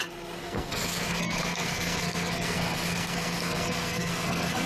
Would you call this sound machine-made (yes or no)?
yes